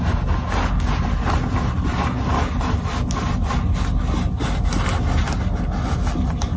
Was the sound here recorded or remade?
recorded